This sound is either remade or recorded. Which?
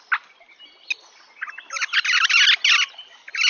recorded